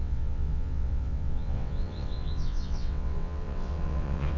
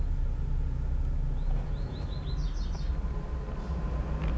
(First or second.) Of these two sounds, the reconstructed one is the first